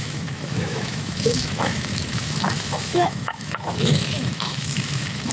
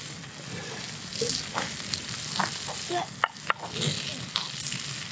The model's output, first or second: first